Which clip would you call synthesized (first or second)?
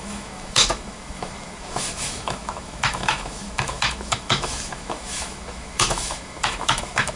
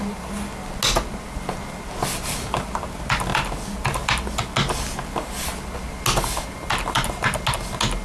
first